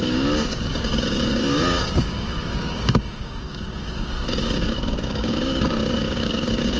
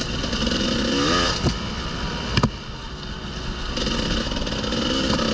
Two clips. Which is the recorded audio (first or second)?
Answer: second